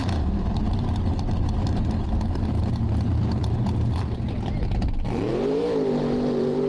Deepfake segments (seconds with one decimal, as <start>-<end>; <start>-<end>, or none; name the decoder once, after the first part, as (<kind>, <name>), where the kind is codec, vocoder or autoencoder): 0.0-4.0 (vocoder, BigVGAN v2); 5.3-6.7